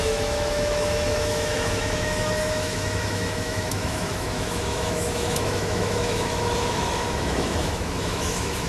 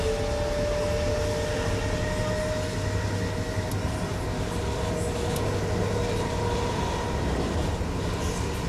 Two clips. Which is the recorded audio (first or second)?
second